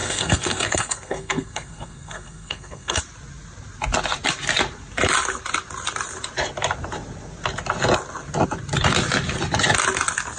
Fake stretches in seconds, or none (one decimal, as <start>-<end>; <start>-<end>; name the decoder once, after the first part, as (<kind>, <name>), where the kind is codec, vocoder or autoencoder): 0.0-3.0 (codec, SNAC)